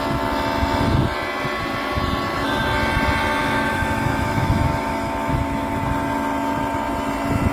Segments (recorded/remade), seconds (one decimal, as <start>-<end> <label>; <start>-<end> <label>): 0.0-3.4 recorded; 3.4-5.8 remade; 5.8-7.5 recorded